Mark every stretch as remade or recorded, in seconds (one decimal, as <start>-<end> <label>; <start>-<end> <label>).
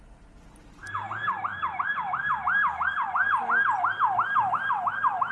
0.0-5.3 recorded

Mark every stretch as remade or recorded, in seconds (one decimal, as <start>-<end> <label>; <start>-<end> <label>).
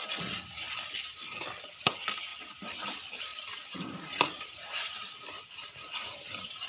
0.0-2.3 recorded; 2.3-2.9 remade; 2.9-3.3 recorded; 3.3-6.7 remade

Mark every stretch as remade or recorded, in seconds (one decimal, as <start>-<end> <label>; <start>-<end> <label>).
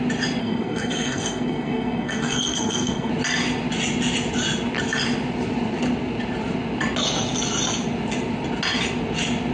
0.0-0.4 recorded; 0.4-3.1 remade; 3.1-9.5 recorded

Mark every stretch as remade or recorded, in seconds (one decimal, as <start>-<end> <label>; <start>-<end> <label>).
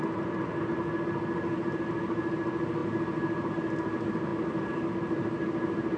0.0-6.0 recorded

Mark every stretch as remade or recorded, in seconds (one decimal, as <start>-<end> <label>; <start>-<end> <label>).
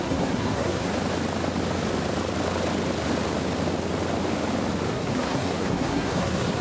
0.0-0.9 remade; 0.9-4.9 recorded; 4.9-6.6 remade